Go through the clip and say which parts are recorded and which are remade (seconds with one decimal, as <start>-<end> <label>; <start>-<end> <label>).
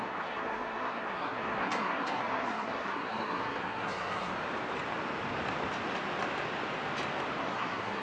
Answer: 0.0-4.3 remade; 4.3-7.4 recorded; 7.4-8.0 remade